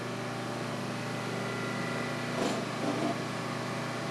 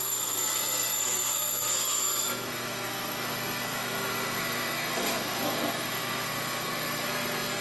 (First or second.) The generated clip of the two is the second